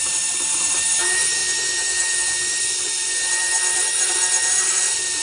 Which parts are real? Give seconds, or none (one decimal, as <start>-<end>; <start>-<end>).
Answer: 1.4-4.5